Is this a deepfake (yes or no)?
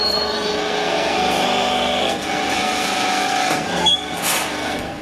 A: yes